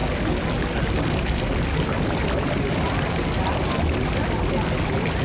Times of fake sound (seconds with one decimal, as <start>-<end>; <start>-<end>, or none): none